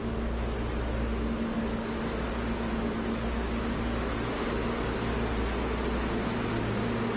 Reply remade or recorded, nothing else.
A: recorded